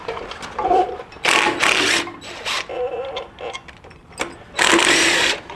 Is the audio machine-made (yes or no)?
no